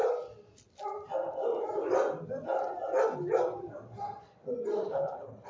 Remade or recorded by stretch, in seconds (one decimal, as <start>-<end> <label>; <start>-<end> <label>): 0.0-4.8 recorded; 4.8-5.5 remade